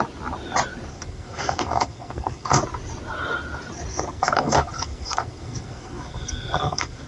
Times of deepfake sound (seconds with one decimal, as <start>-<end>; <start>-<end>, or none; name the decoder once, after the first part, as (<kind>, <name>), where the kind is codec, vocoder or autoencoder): 0.9-2.6 (codec, SNAC); 3.9-7.1